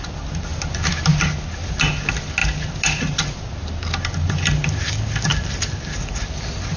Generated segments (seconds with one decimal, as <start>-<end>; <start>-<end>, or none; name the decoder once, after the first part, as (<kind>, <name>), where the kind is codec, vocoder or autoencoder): 5.3-6.3 (vocoder, BigVGAN v2)